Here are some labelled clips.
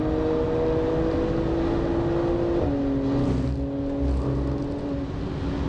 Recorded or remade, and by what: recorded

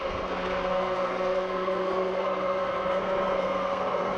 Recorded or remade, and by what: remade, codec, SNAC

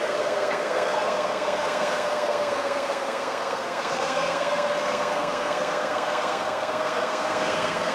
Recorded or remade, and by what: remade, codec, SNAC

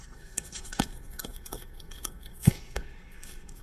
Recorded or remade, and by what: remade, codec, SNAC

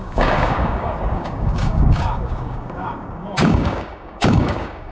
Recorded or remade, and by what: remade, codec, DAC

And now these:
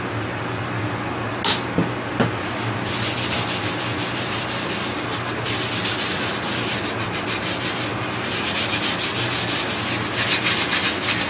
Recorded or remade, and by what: recorded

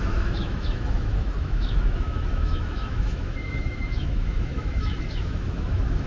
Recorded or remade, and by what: remade, autoencoder, DAC-VAE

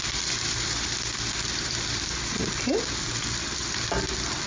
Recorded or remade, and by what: remade, vocoder, BigVGAN v2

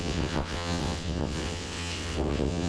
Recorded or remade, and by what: remade, vocoder, WaveNeXt